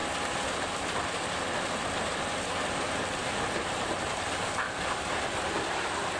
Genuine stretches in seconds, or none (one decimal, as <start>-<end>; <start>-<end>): 0.0-6.2